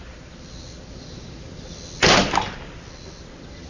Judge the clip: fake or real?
real